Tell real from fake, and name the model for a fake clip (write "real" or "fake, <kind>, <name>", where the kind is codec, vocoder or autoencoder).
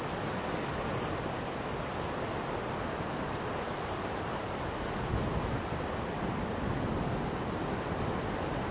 real